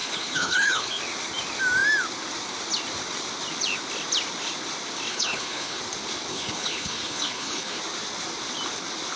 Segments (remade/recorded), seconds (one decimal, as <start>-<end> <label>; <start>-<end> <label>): 0.0-1.0 remade; 1.0-5.1 recorded; 5.1-5.8 remade; 5.8-6.3 recorded; 6.3-7.8 remade; 7.8-9.2 recorded